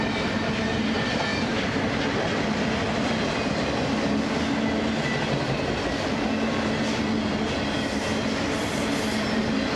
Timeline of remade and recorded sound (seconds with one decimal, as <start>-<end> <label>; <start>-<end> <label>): 0.0-9.8 recorded